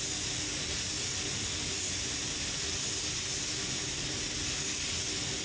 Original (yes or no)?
no